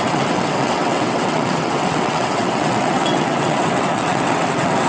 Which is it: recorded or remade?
remade